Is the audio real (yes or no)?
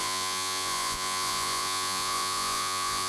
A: no